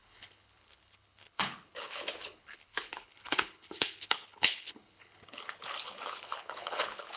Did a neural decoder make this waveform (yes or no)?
yes